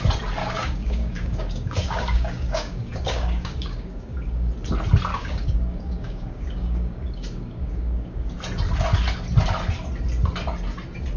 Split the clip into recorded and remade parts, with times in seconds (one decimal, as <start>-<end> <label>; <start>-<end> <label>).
0.0-0.4 recorded; 0.4-4.5 remade; 4.5-5.1 recorded; 5.1-8.3 remade; 8.3-11.2 recorded